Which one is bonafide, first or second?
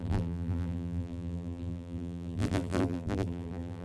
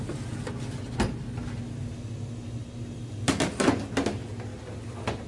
second